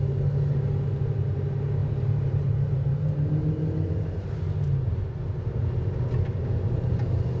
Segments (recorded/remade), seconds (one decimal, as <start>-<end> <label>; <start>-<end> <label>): 0.0-1.8 recorded; 1.8-3.9 remade; 3.9-7.4 recorded